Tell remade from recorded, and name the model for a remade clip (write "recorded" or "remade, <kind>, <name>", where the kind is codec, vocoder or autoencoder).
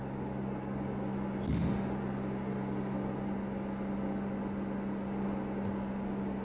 recorded